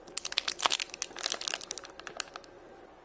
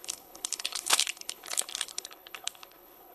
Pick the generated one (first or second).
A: second